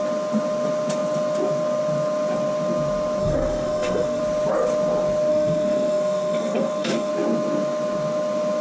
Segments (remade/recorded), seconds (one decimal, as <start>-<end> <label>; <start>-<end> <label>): 0.0-3.2 recorded; 3.2-4.2 remade; 4.2-5.3 recorded; 5.3-7.1 remade; 7.1-8.6 recorded